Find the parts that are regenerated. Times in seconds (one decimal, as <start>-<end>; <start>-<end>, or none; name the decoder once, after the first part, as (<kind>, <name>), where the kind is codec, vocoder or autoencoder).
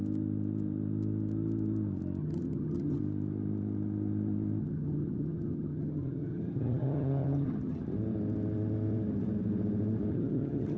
2.2-3.0 (vocoder, HiFi-GAN); 4.6-7.8; 10.1-10.8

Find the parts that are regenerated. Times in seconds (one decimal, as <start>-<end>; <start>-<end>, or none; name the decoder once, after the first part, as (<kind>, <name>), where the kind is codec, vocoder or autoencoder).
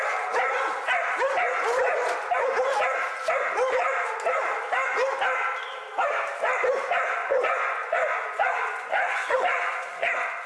7.2-10.1 (vocoder, Vocos)